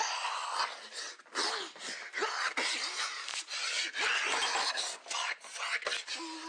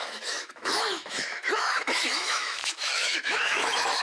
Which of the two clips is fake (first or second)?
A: second